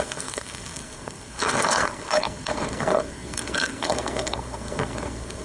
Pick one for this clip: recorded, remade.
remade